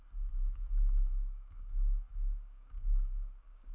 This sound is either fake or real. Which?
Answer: fake